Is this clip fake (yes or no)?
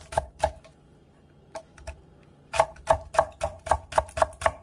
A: no